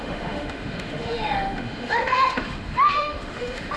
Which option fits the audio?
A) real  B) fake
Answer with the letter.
B